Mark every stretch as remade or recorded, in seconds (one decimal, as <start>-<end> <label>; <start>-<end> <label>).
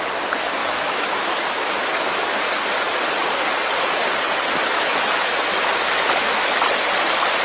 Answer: 0.0-0.6 recorded; 0.6-1.9 remade; 1.9-4.7 recorded; 4.7-5.3 remade; 5.3-7.4 recorded